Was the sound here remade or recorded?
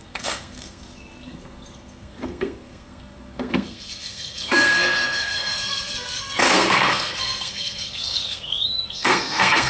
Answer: remade